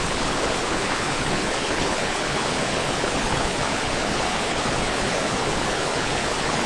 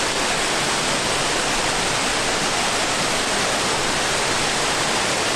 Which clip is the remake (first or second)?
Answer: first